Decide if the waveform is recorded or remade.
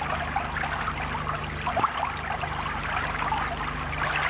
recorded